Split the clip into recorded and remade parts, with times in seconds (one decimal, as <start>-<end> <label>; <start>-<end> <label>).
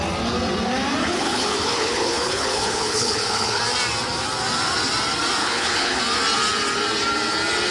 0.0-1.0 recorded; 1.0-3.6 remade; 3.6-5.4 recorded; 5.4-6.0 remade; 6.0-7.7 recorded